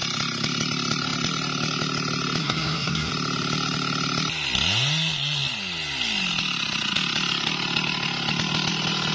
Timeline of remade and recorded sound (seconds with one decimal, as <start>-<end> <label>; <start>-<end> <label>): 0.0-2.4 recorded; 2.4-3.1 remade; 3.1-9.1 recorded